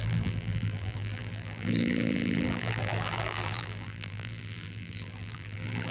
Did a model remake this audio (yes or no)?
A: yes